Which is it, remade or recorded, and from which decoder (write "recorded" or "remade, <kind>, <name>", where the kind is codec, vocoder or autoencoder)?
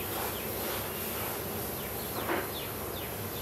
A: recorded